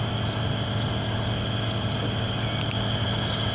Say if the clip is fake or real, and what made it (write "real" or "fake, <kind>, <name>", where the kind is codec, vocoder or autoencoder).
real